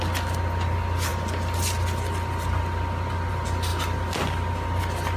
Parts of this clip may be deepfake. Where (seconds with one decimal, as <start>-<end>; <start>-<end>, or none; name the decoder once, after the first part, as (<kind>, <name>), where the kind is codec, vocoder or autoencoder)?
none